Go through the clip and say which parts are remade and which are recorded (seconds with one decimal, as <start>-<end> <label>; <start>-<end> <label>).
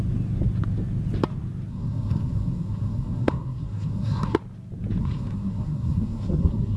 0.0-1.7 recorded; 1.7-4.4 remade; 4.4-5.0 recorded; 5.0-6.8 remade